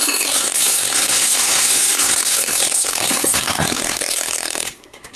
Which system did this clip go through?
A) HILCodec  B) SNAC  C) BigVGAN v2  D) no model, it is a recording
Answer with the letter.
B